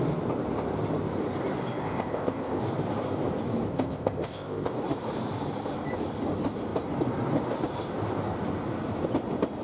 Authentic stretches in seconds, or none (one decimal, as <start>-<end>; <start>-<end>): 0.0-1.8; 2.6-3.7; 4.7-9.6